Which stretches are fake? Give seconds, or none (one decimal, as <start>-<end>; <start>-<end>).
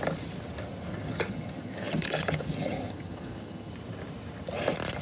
0.9-3.7